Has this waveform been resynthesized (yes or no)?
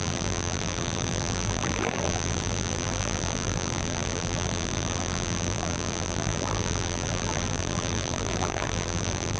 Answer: yes